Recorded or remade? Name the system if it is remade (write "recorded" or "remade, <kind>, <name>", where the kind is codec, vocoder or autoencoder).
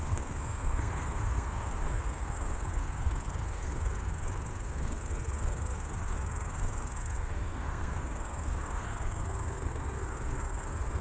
remade, codec, SNAC